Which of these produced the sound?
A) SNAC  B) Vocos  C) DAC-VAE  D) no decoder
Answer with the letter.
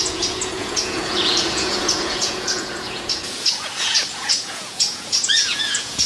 B